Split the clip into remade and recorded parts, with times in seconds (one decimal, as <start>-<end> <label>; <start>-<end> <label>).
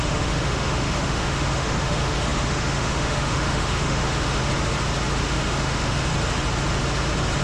0.0-4.4 remade; 4.4-5.2 recorded; 5.2-6.1 remade; 6.1-7.4 recorded